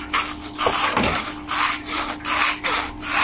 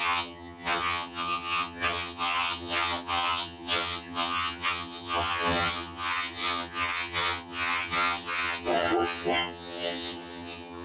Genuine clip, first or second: first